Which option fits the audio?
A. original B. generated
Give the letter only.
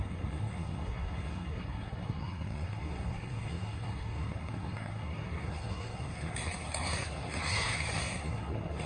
B